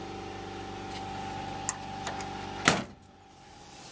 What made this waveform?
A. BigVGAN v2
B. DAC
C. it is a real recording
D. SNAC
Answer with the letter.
C